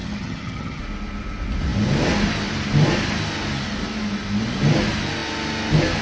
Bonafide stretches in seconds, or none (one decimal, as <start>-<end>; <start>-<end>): 0.8-6.0